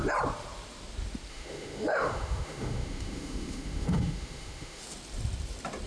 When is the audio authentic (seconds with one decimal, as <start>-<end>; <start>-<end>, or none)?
0.0-1.3; 4.8-5.9